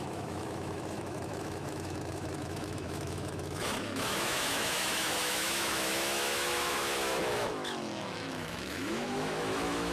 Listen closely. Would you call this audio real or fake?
fake